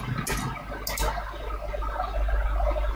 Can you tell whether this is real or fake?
real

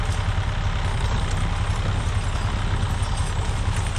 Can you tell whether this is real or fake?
real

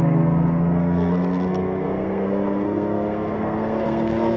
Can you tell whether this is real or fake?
fake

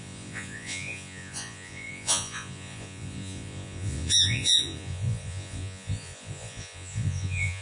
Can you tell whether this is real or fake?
fake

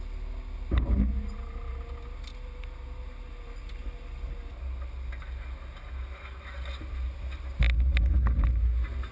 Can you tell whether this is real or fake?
real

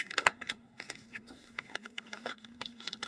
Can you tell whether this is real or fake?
fake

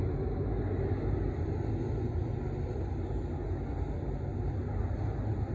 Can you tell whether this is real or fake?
real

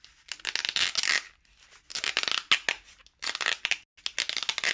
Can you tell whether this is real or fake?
real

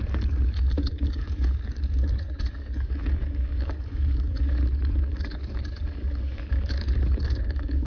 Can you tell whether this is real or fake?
fake